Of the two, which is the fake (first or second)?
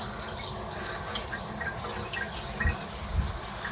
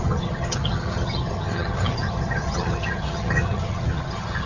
second